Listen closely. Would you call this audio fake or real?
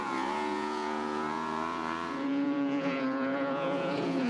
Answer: fake